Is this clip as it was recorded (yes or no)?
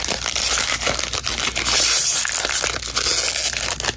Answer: yes